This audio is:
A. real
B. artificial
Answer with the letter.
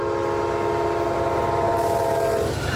A